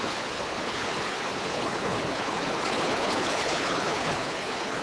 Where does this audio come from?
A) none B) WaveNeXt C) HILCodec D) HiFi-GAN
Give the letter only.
C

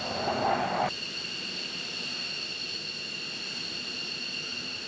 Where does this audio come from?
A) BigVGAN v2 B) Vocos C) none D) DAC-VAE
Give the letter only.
C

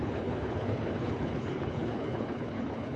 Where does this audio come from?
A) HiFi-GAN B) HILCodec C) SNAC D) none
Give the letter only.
B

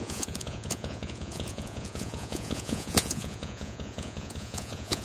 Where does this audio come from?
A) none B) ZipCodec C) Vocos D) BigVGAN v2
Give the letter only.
C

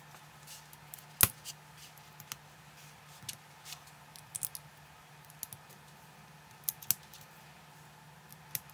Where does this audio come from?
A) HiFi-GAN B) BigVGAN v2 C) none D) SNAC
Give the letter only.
C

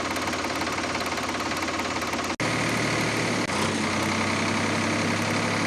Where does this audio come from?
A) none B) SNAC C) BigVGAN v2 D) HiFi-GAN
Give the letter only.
A